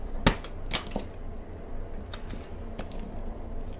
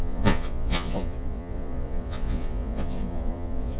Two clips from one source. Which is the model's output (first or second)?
second